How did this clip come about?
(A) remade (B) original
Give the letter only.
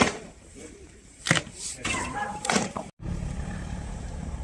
A